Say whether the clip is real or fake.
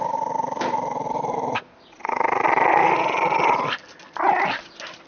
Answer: real